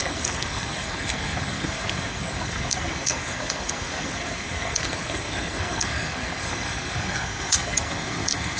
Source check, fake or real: fake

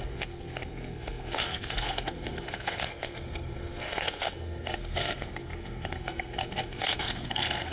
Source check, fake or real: fake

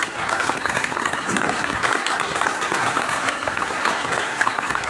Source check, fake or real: fake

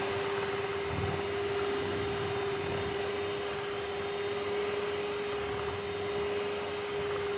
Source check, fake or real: real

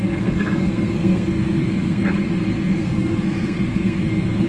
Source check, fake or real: fake